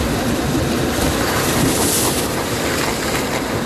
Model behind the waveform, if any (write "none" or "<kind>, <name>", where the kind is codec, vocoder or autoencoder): none